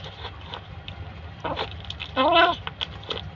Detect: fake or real real